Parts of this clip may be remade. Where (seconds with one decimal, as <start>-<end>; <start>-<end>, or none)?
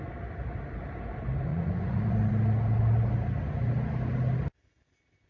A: 1.5-2.3